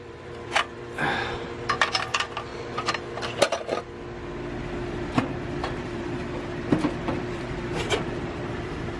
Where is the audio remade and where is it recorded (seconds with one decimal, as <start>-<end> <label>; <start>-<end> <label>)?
0.0-2.5 remade; 2.5-5.2 recorded; 5.2-6.2 remade; 6.2-7.1 recorded; 7.1-9.0 remade